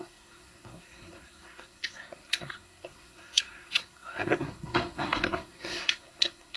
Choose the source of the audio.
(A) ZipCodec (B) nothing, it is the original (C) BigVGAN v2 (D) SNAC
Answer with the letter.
D